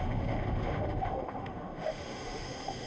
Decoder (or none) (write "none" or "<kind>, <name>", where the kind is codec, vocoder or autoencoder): autoencoder, DAC-VAE